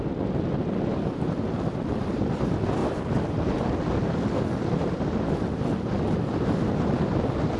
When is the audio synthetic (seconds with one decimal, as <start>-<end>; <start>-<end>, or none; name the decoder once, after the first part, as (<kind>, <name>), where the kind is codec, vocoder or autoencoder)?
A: none